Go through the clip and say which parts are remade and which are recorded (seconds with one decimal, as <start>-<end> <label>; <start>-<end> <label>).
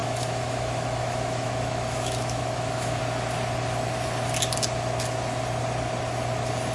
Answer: 0.0-3.0 remade; 3.0-6.7 recorded